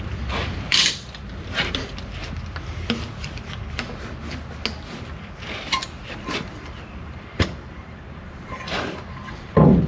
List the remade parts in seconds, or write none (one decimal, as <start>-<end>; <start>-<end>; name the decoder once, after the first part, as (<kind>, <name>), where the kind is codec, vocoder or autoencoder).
0.0-2.2 (vocoder, BigVGAN v2); 6.6-9.9